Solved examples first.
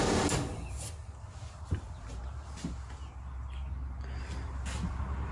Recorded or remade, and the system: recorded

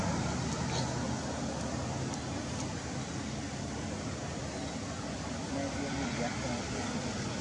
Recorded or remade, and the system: recorded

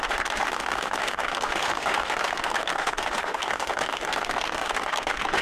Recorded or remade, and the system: remade, autoencoder, DAC-VAE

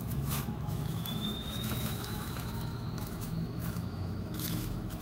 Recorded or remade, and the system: remade, autoencoder, DAC-VAE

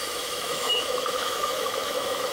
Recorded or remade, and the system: remade, autoencoder, DAC-VAE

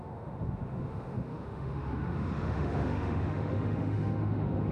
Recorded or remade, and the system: remade, autoencoder, DAC-VAE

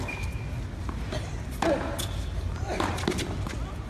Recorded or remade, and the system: recorded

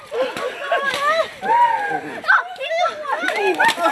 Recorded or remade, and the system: recorded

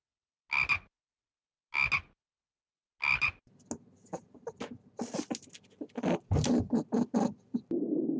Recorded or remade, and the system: recorded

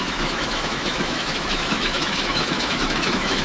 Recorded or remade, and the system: remade, autoencoder, DAC-VAE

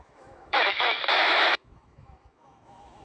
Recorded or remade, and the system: remade, autoencoder, DAC-VAE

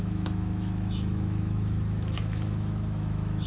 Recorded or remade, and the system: remade, autoencoder, DAC-VAE